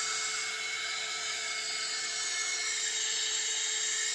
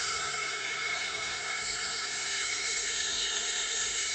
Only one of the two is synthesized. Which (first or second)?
second